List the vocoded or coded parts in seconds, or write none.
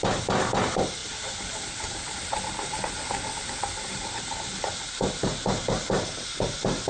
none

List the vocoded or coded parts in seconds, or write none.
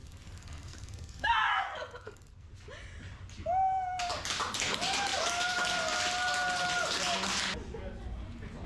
0.0-2.5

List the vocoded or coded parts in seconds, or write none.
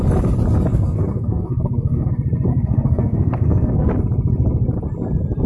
0.7-2.1; 2.5-3.9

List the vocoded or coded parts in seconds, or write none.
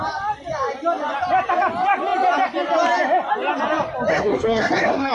4.1-5.1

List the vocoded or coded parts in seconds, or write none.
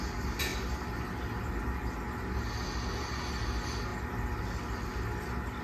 none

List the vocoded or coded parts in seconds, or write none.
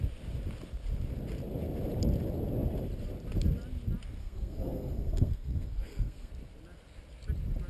4.2-6.3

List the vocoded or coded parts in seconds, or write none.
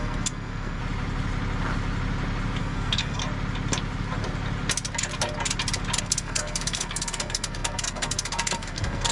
0.0-0.8; 2.6-3.2; 6.0-9.1